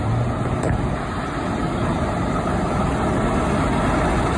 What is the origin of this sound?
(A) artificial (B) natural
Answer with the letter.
B